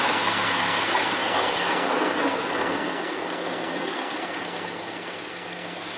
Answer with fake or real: fake